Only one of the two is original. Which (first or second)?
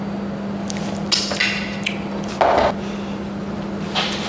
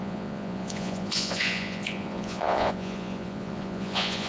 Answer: first